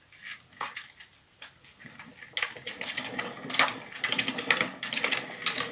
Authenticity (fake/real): real